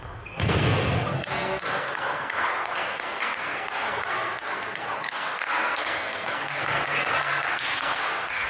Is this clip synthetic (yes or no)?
yes